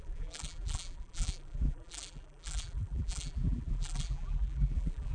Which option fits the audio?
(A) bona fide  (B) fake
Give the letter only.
B